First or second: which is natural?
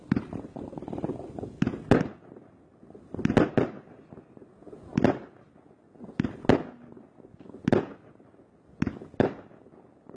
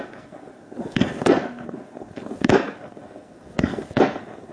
first